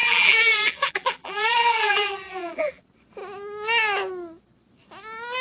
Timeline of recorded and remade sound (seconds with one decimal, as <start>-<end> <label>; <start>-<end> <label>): 0.0-2.8 remade; 2.8-5.4 recorded